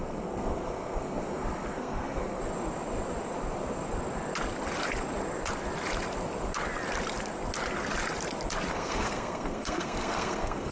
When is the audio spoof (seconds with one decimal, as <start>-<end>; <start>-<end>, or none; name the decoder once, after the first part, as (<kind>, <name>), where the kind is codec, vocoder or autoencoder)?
0.0-2.4 (codec, SNAC); 8.7-10.7